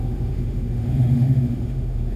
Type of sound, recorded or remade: remade